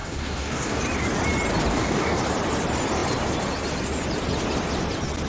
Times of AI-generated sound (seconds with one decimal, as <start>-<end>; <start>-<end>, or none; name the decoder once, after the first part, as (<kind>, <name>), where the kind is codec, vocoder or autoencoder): 0.0-0.8 (codec, DAC); 1.7-2.2